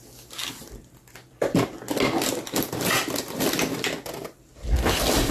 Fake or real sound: real